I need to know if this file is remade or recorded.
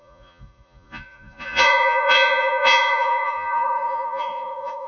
remade